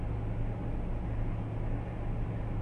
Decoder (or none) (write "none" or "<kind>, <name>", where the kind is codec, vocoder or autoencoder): none